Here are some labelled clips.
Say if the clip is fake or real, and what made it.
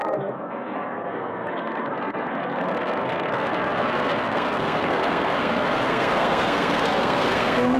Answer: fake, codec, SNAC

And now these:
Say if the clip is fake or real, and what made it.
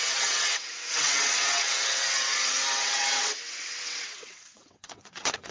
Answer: fake, vocoder, WaveNeXt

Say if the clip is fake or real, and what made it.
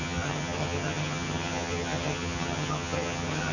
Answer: fake, vocoder, HiFi-GAN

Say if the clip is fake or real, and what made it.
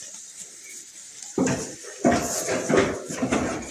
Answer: real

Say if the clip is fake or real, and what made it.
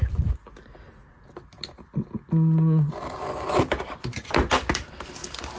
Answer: real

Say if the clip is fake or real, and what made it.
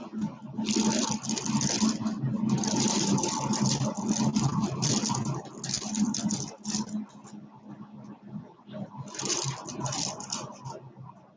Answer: real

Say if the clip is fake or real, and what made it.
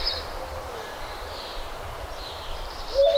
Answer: fake, vocoder, BigVGAN v2